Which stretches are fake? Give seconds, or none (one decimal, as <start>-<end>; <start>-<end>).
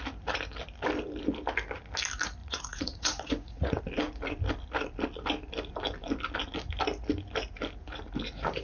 2.4-3.8